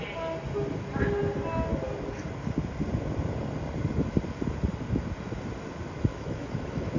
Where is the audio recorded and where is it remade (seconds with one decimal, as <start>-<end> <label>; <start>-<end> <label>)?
0.0-6.1 recorded; 6.1-7.0 remade